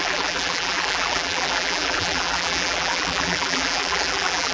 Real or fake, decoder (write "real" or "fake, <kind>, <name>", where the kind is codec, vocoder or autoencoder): fake, vocoder, BigVGAN v2